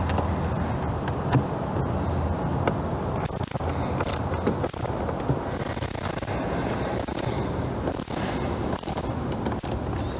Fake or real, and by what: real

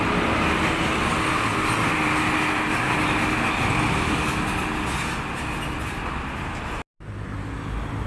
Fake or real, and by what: real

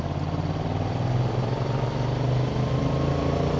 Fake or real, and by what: real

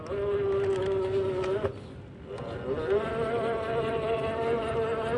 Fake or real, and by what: real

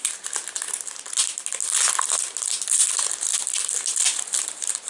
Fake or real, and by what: real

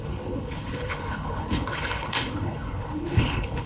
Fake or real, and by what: fake, codec, HILCodec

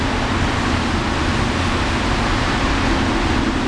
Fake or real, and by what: real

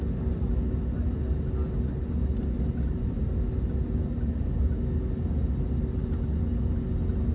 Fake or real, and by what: real